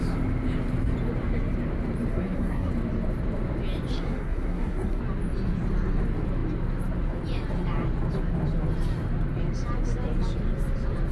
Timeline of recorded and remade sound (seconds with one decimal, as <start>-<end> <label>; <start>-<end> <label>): 0.0-2.1 recorded; 2.1-2.7 remade; 2.7-3.9 recorded; 3.9-5.0 remade; 5.0-11.1 recorded